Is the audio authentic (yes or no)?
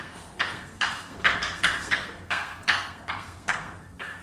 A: no